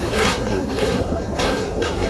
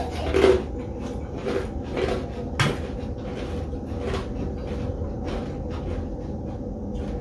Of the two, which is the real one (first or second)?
second